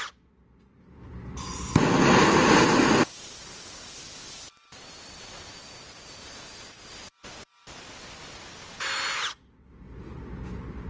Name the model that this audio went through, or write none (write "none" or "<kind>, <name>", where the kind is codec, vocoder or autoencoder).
none